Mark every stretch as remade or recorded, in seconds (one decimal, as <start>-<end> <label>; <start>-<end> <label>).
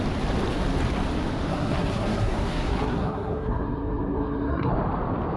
0.0-1.5 recorded; 1.5-4.7 remade; 4.7-5.4 recorded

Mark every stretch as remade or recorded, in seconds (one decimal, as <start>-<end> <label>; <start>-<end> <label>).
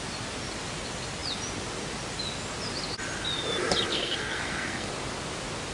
0.0-3.9 recorded; 3.9-4.9 remade; 4.9-5.7 recorded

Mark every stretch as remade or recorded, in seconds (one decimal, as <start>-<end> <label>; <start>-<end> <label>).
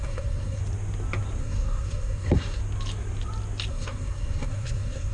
0.0-0.6 remade; 0.6-1.4 recorded; 1.4-2.6 remade; 2.6-3.7 recorded; 3.7-5.1 remade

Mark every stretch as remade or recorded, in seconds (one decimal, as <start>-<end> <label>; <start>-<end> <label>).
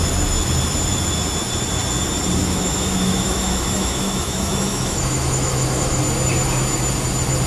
0.0-2.4 recorded; 2.4-6.0 remade; 6.0-7.5 recorded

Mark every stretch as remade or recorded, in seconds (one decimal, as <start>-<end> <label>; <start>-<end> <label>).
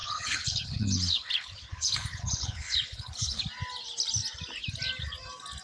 0.0-3.4 remade; 3.4-5.6 recorded